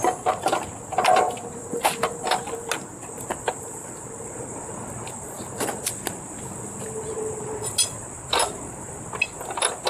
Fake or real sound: real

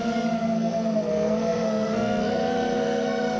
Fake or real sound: fake